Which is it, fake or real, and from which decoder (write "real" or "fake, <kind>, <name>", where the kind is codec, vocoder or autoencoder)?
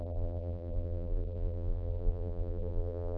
fake, vocoder, BigVGAN v2